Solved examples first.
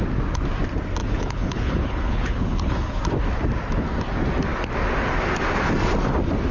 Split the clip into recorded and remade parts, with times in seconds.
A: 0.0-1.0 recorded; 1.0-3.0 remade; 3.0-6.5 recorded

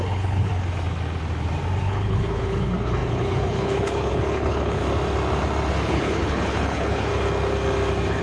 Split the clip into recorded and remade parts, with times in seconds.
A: 0.0-0.5 remade; 0.5-1.8 recorded; 1.8-4.8 remade; 4.8-5.9 recorded; 5.9-7.1 remade; 7.1-8.2 recorded

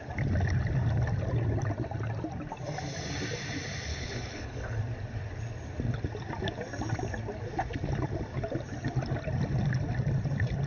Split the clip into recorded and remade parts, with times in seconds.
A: 0.0-3.9 recorded; 3.9-4.8 remade; 4.8-10.7 recorded

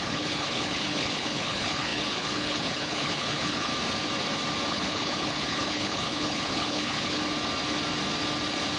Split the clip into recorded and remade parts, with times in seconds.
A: 0.0-3.7 remade; 3.7-4.7 recorded; 4.7-7.2 remade; 7.2-8.8 recorded